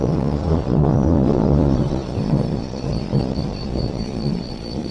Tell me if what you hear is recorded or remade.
remade